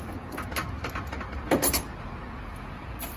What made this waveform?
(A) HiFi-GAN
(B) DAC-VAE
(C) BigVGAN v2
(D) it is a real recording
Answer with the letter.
D